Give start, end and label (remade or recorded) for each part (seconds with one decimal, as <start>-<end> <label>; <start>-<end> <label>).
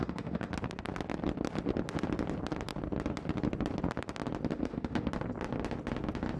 0.0-0.5 remade; 0.5-4.5 recorded; 4.5-5.1 remade; 5.1-6.4 recorded